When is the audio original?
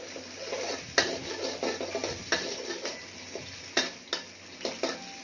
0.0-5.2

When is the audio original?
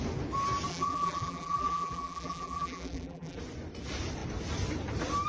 0.0-0.7; 3.4-5.3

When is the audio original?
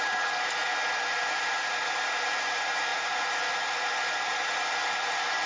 0.0-5.5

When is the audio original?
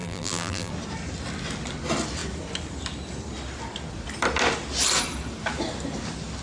0.7-6.4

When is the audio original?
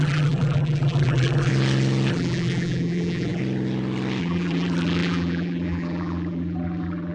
1.5-2.1; 3.4-4.2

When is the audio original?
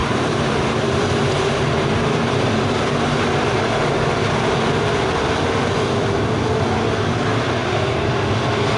3.6-7.6; 8.3-8.8